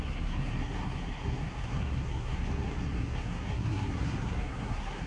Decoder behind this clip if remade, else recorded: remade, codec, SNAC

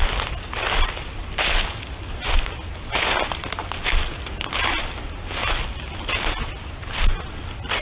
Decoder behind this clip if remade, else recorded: recorded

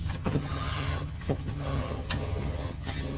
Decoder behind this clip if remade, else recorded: remade, vocoder, HiFi-GAN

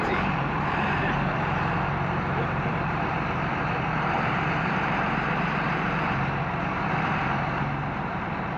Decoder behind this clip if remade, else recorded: remade, vocoder, BigVGAN v2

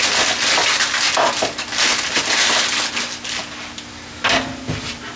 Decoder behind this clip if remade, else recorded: recorded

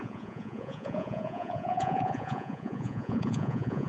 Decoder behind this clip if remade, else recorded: remade, vocoder, Vocos